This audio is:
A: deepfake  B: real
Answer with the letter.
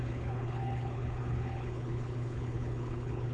A